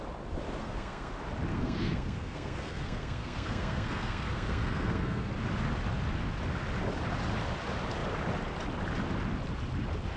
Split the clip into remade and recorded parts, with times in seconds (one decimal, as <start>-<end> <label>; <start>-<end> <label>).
0.0-0.6 recorded; 0.6-1.1 remade; 1.1-1.5 recorded; 1.5-5.3 remade; 5.3-10.2 recorded

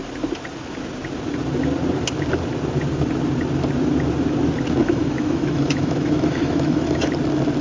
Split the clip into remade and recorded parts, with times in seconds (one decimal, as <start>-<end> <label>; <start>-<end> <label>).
0.0-4.8 recorded; 4.8-7.1 remade; 7.1-7.6 recorded

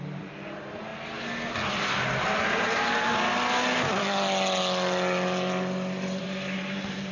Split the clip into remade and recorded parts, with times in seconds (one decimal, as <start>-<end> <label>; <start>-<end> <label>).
0.0-0.9 remade; 0.9-2.2 recorded; 2.2-3.1 remade; 3.1-6.2 recorded; 6.2-7.1 remade

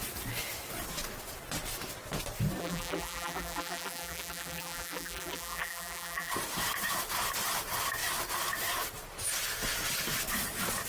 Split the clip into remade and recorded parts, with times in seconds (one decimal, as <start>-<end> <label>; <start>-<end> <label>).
0.0-2.6 recorded; 2.6-6.3 remade; 6.3-10.9 recorded

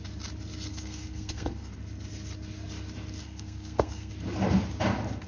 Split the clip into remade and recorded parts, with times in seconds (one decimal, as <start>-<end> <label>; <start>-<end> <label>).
0.0-0.7 recorded; 0.7-1.7 remade; 1.7-3.2 recorded; 3.2-4.1 remade; 4.1-5.3 recorded

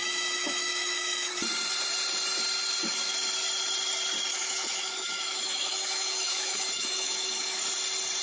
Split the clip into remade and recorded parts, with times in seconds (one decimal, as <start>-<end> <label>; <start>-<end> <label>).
0.0-1.3 remade; 1.3-4.3 recorded; 4.3-7.6 remade; 7.6-8.2 recorded

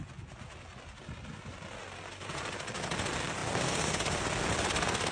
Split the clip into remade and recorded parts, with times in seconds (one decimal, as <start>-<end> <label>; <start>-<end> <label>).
0.0-5.1 recorded